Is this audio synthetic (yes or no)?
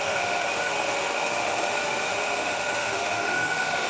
yes